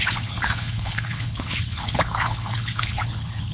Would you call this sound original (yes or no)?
no